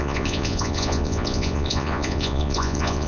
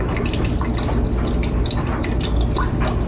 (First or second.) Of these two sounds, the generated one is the first